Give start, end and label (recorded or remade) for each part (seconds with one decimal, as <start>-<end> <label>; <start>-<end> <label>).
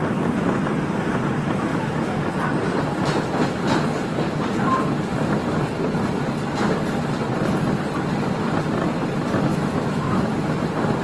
0.0-1.7 recorded; 1.7-2.4 remade; 2.4-9.5 recorded; 9.5-10.3 remade; 10.3-11.0 recorded